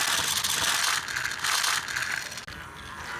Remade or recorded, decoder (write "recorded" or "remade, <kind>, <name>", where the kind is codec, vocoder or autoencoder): recorded